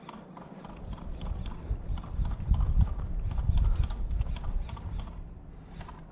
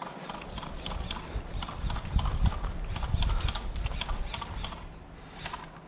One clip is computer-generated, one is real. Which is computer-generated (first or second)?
first